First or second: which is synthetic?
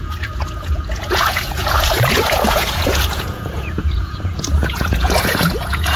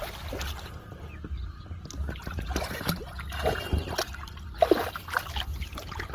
first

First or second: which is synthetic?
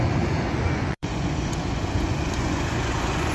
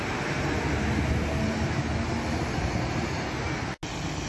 first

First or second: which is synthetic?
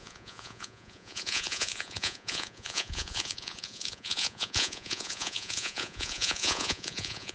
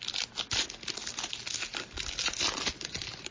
first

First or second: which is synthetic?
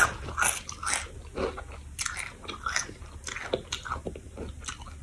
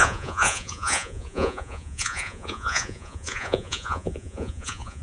second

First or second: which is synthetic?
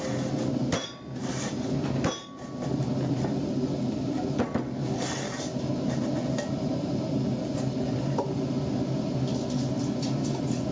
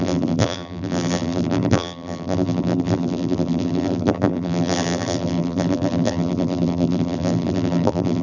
second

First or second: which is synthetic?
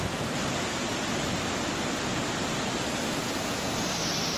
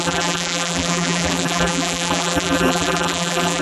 second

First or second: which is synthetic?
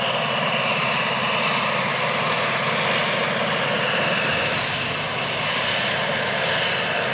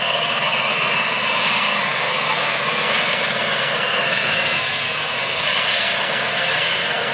second